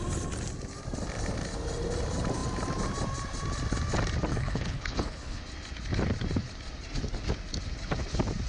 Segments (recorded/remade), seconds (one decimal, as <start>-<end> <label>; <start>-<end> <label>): 0.0-4.3 recorded; 4.3-5.4 remade; 5.4-8.5 recorded